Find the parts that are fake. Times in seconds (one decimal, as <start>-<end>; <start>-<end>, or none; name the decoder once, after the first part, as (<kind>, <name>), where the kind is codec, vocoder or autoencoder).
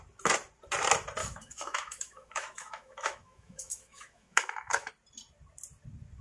1.2-4.9 (autoencoder, DAC-VAE)